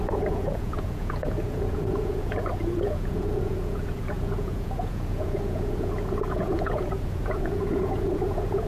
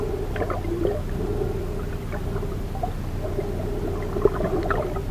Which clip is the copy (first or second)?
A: first